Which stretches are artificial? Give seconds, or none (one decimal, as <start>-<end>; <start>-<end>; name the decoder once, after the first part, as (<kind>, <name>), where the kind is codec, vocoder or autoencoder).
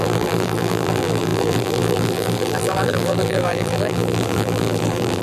0.0-5.2 (vocoder, BigVGAN v2)